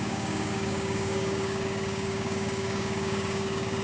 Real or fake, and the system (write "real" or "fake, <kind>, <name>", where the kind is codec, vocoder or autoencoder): fake, codec, DAC